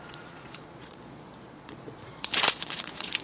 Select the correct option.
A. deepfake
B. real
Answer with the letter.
A